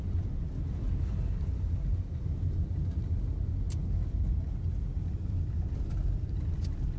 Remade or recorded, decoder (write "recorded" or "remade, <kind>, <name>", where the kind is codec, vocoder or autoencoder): recorded